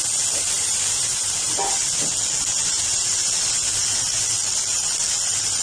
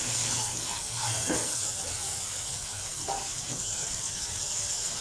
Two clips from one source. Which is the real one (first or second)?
first